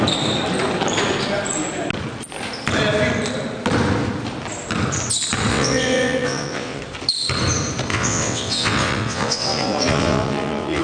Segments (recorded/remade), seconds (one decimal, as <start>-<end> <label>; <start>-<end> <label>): 0.0-5.5 recorded; 5.5-6.8 remade; 6.8-7.9 recorded; 7.9-10.8 remade